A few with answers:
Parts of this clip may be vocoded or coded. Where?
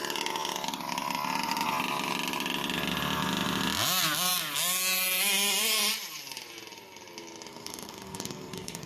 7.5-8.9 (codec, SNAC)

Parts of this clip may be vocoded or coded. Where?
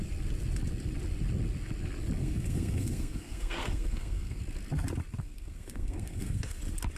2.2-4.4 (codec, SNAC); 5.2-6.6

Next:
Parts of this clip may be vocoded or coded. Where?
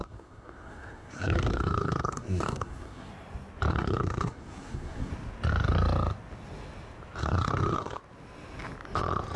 0.0-3.1 (codec, SNAC); 3.7-5.1; 7.2-8.0